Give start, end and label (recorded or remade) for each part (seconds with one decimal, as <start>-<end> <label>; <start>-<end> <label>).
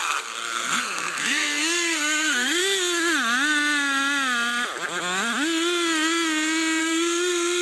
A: 0.0-2.6 remade; 2.6-6.8 recorded; 6.8-7.6 remade